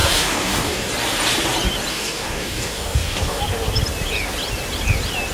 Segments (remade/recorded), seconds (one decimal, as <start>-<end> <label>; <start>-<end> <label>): 0.0-0.9 remade; 0.9-1.9 recorded; 1.9-3.4 remade; 3.4-5.3 recorded